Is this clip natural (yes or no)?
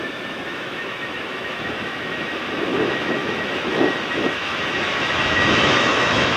no